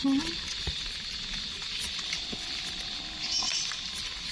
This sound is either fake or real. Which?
real